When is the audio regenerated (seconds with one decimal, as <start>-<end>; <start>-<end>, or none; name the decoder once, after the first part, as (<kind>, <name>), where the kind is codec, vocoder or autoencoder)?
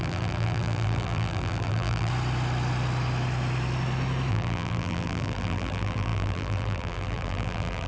0.0-2.1 (vocoder, BigVGAN v2); 4.3-7.9